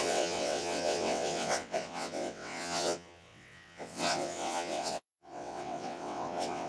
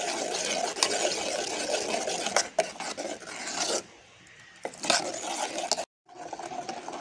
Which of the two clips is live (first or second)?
second